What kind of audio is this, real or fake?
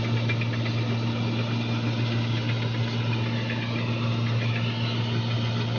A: real